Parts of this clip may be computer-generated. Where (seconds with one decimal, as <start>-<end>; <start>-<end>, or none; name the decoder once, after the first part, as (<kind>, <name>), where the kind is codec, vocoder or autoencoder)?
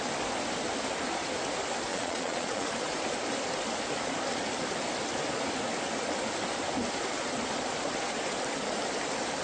1.9-2.7 (vocoder, Vocos)